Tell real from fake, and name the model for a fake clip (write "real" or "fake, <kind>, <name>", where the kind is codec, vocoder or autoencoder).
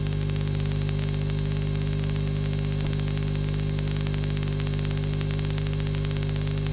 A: real